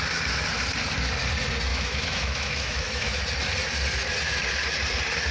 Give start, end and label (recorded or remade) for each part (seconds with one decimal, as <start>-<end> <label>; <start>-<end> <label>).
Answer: 0.0-1.7 recorded; 1.7-3.2 remade; 3.2-5.3 recorded